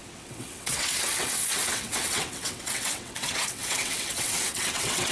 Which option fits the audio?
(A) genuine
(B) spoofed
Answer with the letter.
B